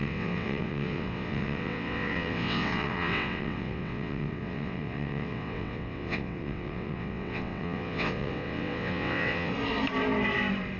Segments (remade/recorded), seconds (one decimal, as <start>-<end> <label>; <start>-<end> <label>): 0.0-9.5 remade; 9.5-10.8 recorded